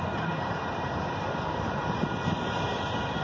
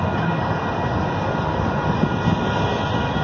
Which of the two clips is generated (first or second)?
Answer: first